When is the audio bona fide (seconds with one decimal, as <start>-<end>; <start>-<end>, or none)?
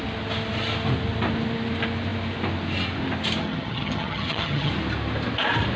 0.0-3.4; 4.7-5.8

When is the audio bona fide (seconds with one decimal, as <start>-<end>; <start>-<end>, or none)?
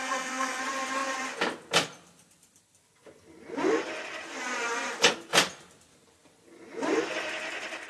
0.6-7.9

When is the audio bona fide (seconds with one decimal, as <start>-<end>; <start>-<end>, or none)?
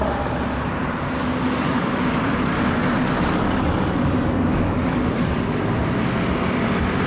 0.0-1.2; 2.0-3.1; 5.6-7.1